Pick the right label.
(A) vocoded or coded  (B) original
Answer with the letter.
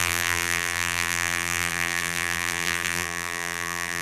A